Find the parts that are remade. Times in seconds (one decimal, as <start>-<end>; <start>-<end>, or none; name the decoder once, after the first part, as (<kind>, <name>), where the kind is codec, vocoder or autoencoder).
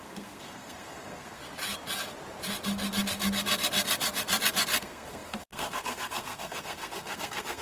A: 0.0-1.4 (codec, SNAC); 4.8-7.6